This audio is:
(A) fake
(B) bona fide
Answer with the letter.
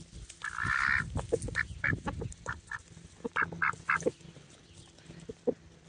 B